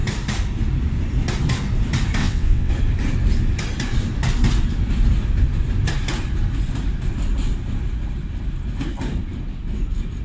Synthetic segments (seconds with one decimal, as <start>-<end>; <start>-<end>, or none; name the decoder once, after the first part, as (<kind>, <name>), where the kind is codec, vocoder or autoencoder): 2.2-2.7 (vocoder, WaveNeXt)